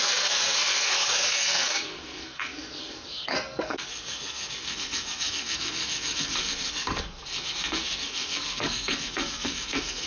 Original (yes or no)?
no